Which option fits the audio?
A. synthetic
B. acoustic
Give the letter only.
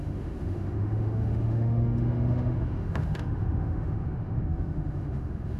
A